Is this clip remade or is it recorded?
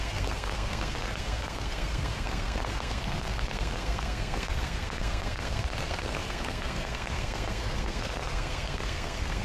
remade